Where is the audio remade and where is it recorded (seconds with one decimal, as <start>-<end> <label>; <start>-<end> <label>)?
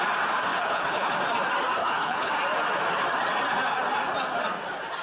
0.0-0.5 recorded; 0.5-1.1 remade; 1.1-1.8 recorded; 1.8-2.3 remade; 2.3-5.0 recorded